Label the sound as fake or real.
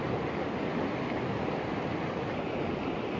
real